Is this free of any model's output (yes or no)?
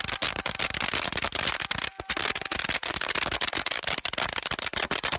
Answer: yes